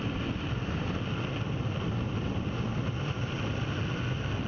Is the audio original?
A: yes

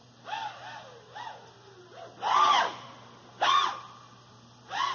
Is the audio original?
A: yes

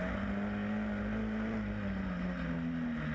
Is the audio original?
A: yes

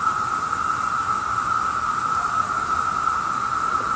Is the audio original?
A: yes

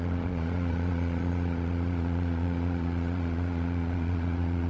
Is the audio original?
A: no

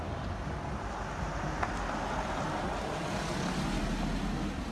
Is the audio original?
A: yes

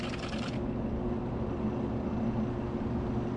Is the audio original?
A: yes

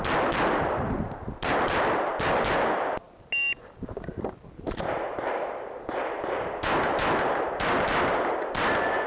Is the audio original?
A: yes